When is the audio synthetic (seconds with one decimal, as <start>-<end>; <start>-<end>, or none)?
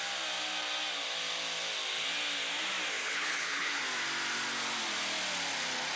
3.0-3.8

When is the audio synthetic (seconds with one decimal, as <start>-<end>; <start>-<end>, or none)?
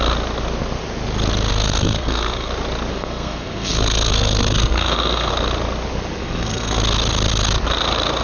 1.5-2.5; 2.9-5.3; 6.2-6.8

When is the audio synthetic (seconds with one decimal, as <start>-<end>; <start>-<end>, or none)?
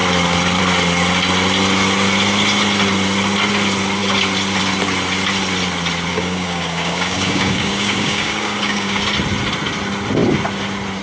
6.1-9.0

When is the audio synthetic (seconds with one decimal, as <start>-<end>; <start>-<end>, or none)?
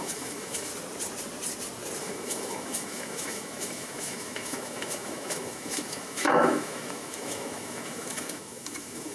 0.0-0.7; 2.0-9.1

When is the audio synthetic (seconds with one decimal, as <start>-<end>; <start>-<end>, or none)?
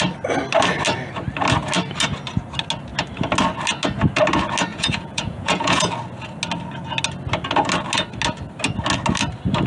4.7-5.9